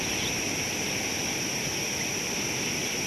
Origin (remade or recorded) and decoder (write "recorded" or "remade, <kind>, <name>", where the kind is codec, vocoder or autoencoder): recorded